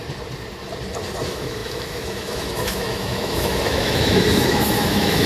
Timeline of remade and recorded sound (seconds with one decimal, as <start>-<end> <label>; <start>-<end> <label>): 0.0-1.2 recorded; 1.2-5.3 remade